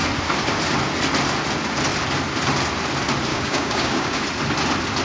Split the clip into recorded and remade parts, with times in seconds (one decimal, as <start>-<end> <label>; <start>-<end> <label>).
0.0-3.3 recorded; 3.3-4.2 remade; 4.2-5.0 recorded